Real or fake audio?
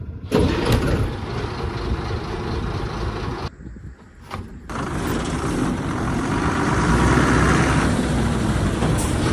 fake